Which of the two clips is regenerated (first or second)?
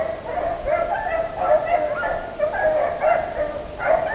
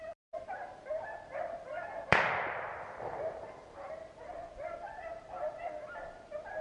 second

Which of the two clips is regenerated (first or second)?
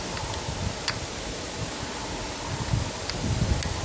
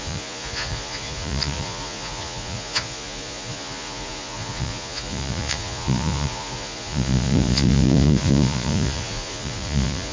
second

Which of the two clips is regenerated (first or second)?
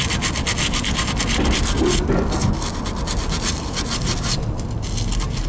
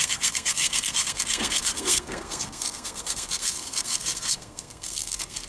second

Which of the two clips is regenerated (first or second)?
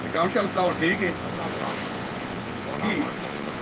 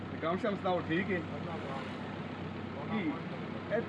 first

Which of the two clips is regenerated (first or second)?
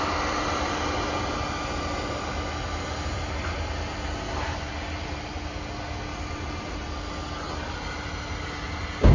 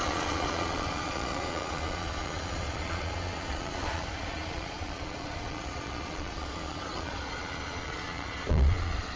second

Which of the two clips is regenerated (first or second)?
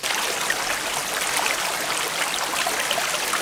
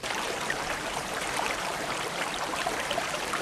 second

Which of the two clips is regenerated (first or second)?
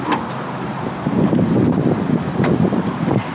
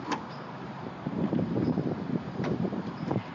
second